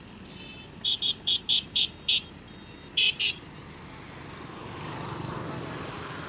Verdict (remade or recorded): recorded